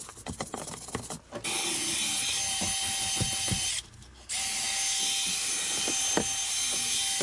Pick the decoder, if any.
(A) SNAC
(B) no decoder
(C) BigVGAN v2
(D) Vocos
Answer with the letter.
B